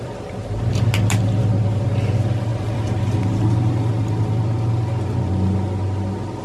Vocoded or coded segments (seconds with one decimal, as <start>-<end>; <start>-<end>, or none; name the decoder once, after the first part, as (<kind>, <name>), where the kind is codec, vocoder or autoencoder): none